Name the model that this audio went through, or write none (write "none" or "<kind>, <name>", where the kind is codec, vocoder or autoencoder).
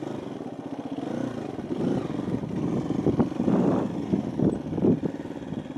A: none